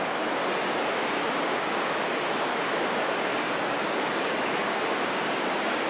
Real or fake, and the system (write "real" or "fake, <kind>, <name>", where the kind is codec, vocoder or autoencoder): fake, codec, DAC